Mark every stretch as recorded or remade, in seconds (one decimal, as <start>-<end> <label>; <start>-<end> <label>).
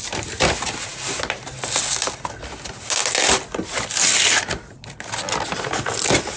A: 0.0-6.4 recorded